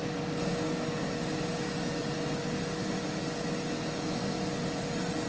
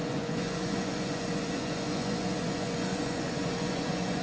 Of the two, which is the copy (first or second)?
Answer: second